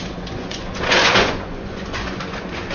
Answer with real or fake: fake